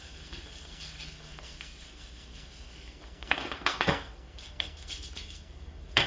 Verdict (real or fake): fake